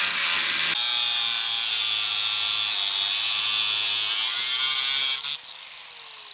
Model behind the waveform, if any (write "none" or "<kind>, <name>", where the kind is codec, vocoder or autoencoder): none